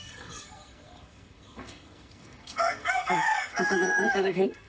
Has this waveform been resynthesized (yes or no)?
yes